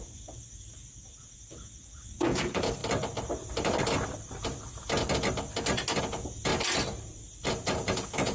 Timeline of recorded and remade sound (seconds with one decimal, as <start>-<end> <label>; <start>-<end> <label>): 0.0-2.8 remade; 2.8-6.0 recorded; 6.0-6.5 remade; 6.5-7.5 recorded; 7.5-8.3 remade